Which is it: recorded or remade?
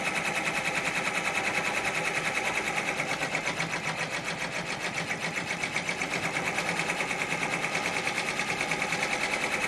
recorded